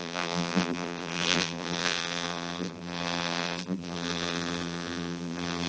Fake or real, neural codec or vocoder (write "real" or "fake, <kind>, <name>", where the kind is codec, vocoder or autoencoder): fake, vocoder, BigVGAN v2